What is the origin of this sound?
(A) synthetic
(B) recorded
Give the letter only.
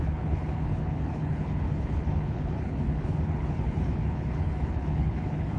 A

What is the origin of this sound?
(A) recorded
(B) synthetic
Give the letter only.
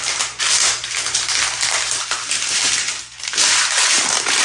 A